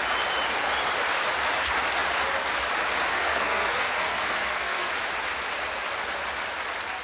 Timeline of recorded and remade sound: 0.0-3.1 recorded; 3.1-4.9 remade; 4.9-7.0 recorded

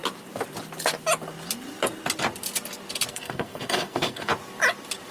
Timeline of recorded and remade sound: 0.0-3.1 recorded; 3.1-4.3 remade; 4.3-5.1 recorded

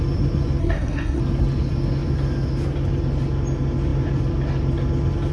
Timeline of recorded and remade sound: 0.0-0.6 recorded; 0.6-1.2 remade; 1.2-5.3 recorded

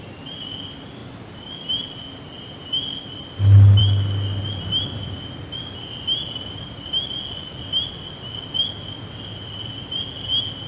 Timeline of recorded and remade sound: 0.0-10.7 recorded

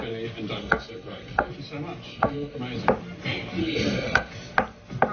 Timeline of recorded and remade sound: 0.0-0.6 recorded; 0.6-1.5 remade; 1.5-2.1 recorded; 2.1-2.6 remade; 2.6-3.6 recorded; 3.6-4.3 remade; 4.3-5.1 recorded

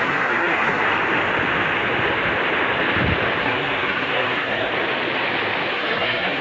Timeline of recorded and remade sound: 0.0-0.9 remade; 0.9-3.4 recorded; 3.4-4.7 remade; 4.7-5.7 recorded; 5.7-6.4 remade

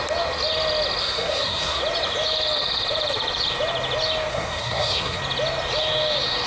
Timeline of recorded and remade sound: 0.0-1.0 recorded; 1.0-1.8 remade; 1.8-4.3 recorded; 4.3-5.2 remade; 5.2-6.5 recorded

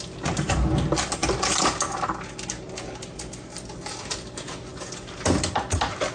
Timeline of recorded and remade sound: 0.0-6.1 recorded